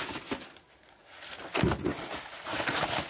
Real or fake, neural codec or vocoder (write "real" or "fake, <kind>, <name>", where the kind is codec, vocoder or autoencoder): real